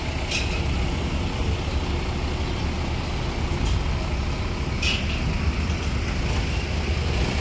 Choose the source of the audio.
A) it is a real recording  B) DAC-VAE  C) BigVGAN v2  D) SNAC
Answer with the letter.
A